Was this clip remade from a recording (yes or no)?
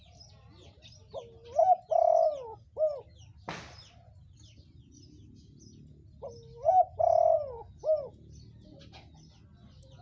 no